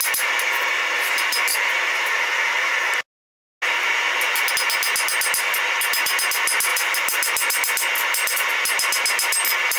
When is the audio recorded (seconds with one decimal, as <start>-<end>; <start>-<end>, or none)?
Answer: 0.0-9.8